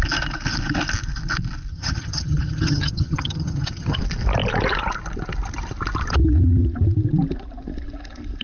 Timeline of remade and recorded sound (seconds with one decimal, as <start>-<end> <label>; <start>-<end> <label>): 0.0-1.7 recorded; 1.7-4.0 remade; 4.0-8.4 recorded